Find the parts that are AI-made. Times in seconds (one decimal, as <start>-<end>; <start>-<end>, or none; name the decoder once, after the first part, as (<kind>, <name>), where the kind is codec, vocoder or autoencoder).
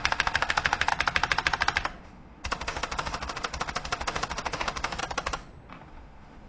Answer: 0.0-0.9 (autoencoder, DAC-VAE); 2.0-5.0; 5.7-6.5